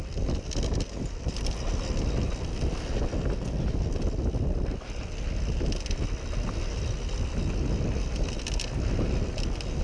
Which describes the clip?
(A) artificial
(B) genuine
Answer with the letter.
B